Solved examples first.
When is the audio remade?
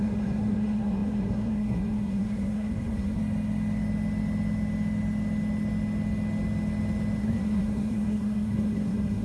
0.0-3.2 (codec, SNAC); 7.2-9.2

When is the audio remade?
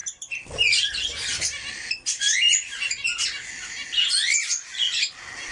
none